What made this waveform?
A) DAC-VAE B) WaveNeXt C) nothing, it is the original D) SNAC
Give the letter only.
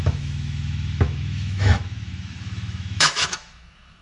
A